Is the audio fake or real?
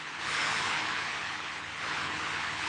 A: fake